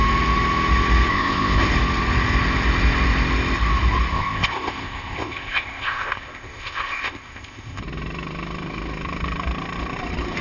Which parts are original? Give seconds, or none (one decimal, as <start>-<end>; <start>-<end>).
0.0-1.1; 1.6-4.1; 7.8-10.4